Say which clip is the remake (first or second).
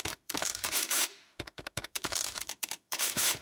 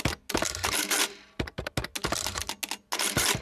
first